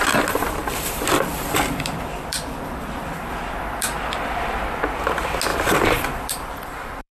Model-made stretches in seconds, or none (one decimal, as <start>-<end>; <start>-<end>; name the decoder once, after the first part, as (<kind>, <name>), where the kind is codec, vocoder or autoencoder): 0.6-4.6 (vocoder, BigVGAN v2); 5.5-7.1